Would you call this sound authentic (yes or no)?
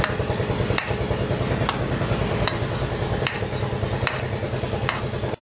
yes